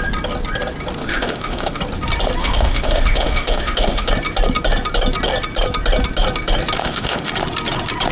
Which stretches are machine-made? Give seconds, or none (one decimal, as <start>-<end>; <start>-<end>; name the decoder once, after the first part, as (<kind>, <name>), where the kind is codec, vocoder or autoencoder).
1.0-1.8 (autoencoder, DAC-VAE); 2.4-4.1; 6.8-7.3